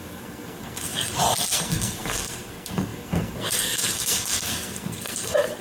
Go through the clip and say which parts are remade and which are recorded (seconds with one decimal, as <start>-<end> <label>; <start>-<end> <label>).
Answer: 0.0-5.6 remade